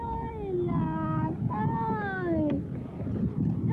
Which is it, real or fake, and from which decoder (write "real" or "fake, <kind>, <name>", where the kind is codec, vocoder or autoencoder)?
real